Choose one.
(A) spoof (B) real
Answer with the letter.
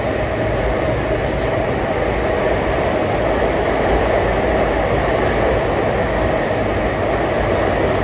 B